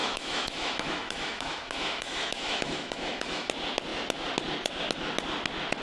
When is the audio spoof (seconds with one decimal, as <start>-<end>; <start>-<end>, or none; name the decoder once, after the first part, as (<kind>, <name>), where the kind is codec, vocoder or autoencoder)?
0.0-3.5 (autoencoder, DAC-VAE)